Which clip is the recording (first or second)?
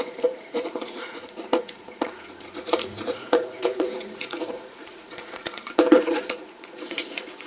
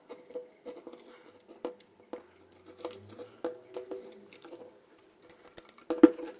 second